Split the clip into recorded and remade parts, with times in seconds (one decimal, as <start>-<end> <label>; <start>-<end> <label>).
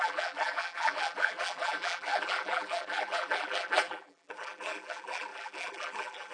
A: 0.0-6.3 remade